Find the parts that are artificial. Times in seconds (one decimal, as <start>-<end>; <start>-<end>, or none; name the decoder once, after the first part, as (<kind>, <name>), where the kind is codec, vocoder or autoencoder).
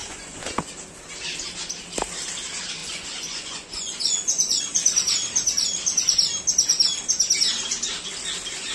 0.0-0.6 (vocoder, Vocos); 2.8-4.6